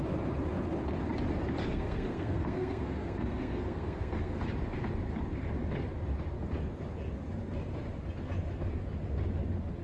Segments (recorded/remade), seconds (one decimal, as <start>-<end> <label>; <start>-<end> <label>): 0.0-1.6 recorded; 1.6-4.4 remade; 4.4-9.8 recorded